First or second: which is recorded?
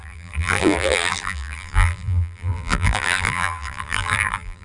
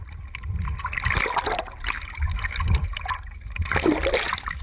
second